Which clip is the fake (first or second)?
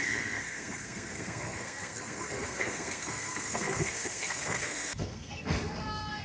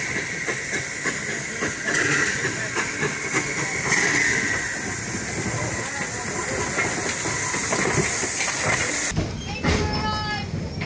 first